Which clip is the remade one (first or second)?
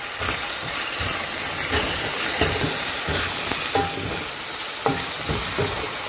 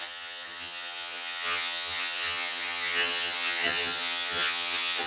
second